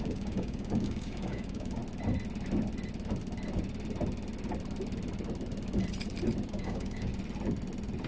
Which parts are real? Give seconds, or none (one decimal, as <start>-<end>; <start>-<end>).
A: 1.8-6.5; 7.1-8.1